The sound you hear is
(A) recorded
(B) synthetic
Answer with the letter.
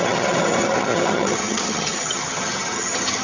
B